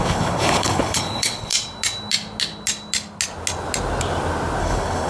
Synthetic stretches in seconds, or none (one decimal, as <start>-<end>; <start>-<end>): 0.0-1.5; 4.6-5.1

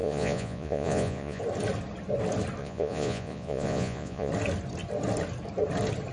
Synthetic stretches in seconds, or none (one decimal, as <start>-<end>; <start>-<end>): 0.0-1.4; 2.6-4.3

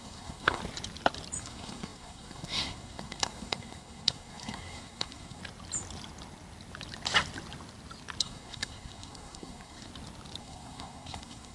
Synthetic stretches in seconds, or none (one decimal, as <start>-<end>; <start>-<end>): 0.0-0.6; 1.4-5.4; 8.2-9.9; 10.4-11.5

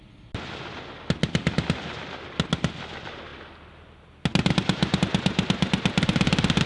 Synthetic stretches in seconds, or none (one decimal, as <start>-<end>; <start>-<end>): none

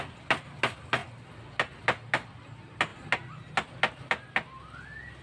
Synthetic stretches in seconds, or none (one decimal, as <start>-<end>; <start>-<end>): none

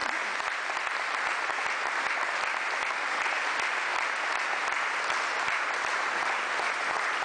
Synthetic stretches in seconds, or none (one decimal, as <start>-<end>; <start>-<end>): none